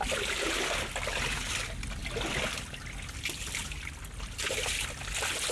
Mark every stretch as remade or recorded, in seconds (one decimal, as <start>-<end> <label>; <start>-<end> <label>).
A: 0.0-5.5 recorded